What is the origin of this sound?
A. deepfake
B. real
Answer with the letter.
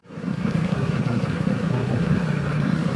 A